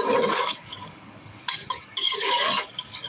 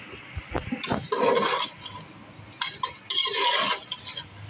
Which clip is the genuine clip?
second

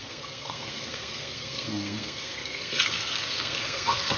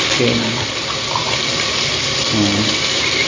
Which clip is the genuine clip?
second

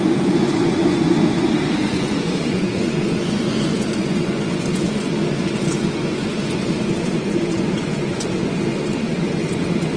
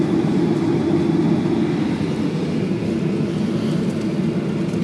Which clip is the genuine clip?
second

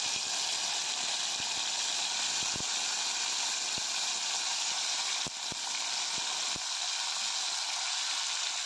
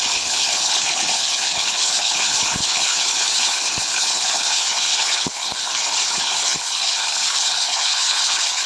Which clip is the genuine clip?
first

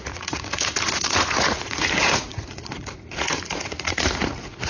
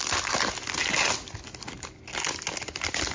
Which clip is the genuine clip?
second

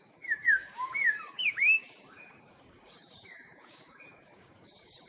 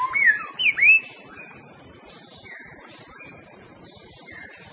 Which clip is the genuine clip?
second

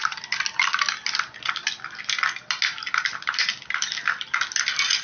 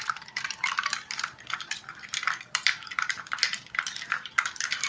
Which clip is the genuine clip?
first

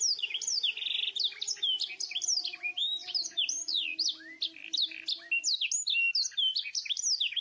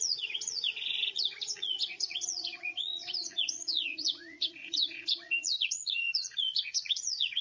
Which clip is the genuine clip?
first